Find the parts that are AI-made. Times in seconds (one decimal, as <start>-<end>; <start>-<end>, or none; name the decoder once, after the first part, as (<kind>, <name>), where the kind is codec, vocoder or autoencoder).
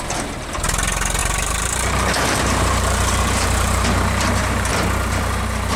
1.2-4.7 (vocoder, BigVGAN v2)